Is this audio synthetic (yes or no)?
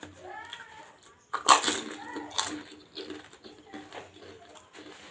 no